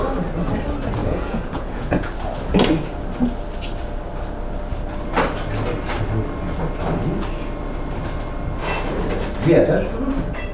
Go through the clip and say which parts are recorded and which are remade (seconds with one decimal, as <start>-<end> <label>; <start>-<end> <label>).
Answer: 0.0-1.0 recorded; 1.0-2.1 remade; 2.1-10.5 recorded